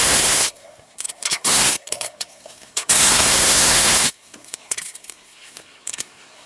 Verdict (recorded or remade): remade